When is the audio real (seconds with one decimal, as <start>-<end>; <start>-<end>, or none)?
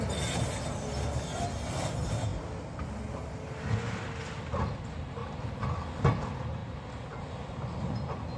0.0-8.4